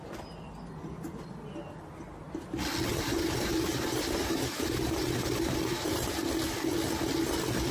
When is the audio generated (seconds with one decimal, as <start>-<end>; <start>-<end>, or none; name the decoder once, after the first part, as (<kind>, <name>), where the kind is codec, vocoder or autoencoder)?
2.9-6.2 (vocoder, BigVGAN v2)